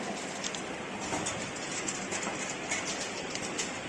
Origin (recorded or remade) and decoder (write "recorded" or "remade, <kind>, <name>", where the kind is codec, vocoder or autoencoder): recorded